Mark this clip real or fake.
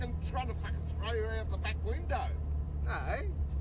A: real